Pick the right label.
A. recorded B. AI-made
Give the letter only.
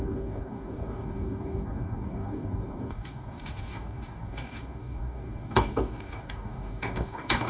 B